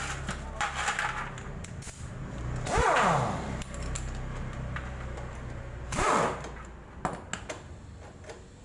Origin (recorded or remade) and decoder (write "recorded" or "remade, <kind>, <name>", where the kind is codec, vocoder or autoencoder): recorded